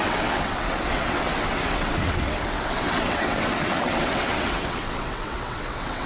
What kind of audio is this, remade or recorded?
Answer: remade